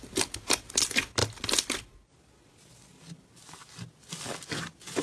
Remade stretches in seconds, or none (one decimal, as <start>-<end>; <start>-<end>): none